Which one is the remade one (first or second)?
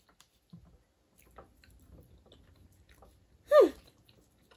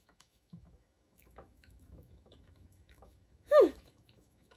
second